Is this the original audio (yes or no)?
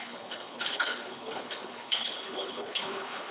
no